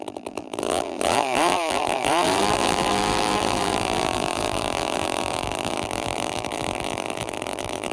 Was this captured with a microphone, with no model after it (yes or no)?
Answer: no